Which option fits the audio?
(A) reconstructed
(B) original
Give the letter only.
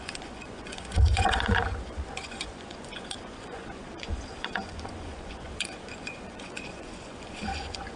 A